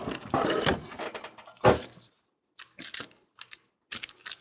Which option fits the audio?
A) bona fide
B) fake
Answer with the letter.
A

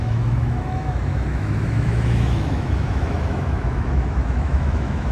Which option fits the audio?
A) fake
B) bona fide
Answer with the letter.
A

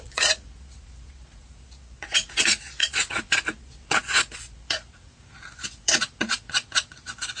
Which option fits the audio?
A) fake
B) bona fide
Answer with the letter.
A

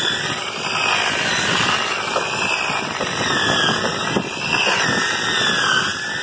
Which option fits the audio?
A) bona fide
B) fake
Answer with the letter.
A